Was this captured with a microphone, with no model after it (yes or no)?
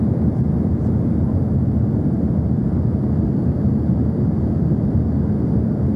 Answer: yes